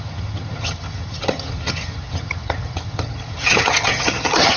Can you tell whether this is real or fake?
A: fake